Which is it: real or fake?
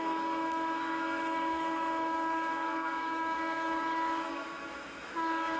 fake